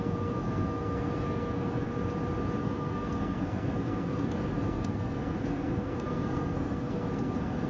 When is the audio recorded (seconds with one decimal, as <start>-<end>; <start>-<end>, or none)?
1.9-2.6